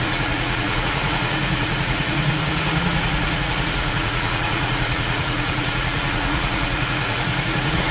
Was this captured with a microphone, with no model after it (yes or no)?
no